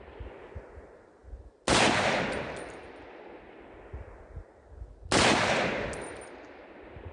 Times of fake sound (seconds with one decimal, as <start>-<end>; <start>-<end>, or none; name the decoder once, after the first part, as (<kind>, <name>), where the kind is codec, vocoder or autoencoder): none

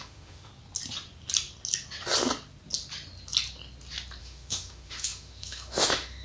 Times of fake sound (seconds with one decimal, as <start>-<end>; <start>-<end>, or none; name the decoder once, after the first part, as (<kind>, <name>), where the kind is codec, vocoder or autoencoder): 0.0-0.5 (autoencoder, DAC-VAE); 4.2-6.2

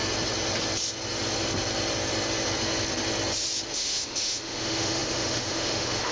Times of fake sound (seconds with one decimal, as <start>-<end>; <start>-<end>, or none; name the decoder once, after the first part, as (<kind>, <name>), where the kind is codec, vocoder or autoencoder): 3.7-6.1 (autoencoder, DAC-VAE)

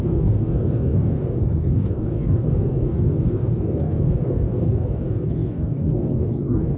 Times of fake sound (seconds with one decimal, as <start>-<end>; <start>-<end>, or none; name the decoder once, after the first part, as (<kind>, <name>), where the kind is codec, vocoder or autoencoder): 0.0-6.8 (codec, DAC)

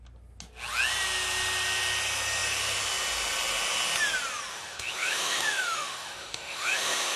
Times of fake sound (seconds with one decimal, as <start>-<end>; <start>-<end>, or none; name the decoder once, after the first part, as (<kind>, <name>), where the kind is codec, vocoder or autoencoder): 4.5-7.2 (autoencoder, DAC-VAE)

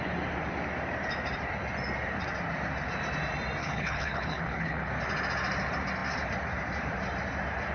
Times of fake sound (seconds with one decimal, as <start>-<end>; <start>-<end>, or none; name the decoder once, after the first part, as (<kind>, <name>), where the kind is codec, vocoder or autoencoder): 3.6-4.9 (codec, HILCodec)